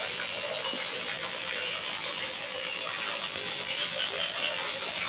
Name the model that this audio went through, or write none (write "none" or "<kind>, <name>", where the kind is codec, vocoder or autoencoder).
vocoder, BigVGAN v2